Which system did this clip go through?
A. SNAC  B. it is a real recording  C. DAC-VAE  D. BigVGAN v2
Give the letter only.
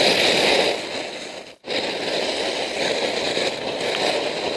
B